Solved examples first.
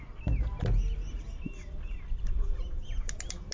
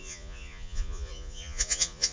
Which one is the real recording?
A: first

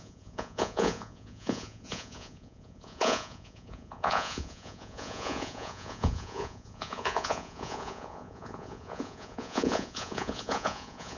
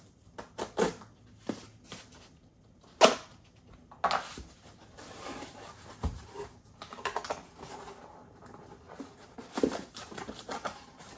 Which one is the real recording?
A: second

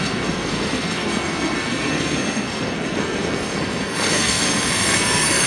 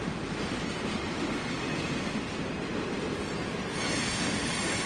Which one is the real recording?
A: second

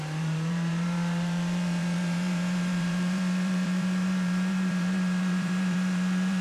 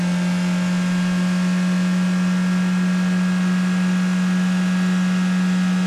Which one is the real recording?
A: second